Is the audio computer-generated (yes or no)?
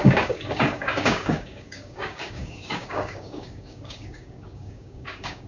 yes